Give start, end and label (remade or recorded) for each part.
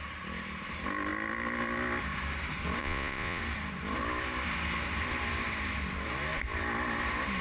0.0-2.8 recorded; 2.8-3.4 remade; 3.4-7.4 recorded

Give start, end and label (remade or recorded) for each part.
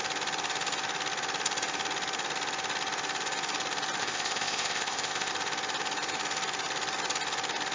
0.0-4.0 recorded; 4.0-5.3 remade; 5.3-7.7 recorded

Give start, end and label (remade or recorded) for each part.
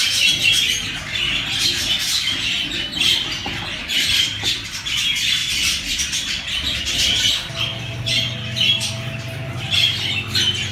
0.0-10.7 recorded